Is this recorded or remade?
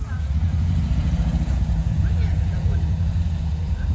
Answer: remade